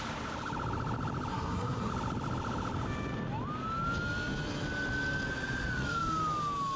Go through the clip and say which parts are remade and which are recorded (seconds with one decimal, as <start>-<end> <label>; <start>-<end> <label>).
0.0-1.3 recorded; 1.3-1.9 remade; 1.9-6.8 recorded